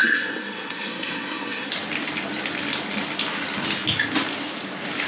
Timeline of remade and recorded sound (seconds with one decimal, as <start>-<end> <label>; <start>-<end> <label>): 0.0-1.7 remade; 1.7-5.1 recorded